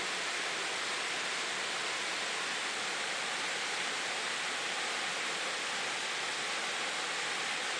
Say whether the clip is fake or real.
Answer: real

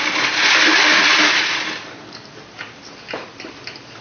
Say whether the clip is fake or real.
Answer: real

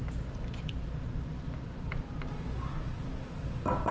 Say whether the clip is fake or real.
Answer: real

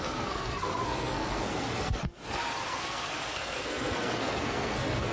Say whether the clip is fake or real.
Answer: fake